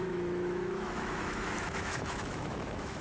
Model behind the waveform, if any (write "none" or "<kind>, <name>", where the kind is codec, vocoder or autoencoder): autoencoder, DAC-VAE